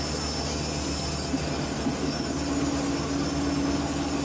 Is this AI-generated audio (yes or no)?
no